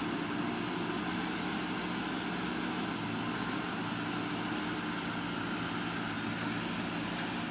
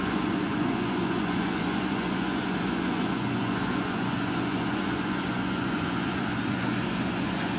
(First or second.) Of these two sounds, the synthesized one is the second